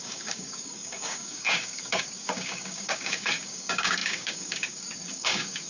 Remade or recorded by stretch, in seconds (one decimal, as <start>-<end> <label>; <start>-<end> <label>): 0.0-5.7 remade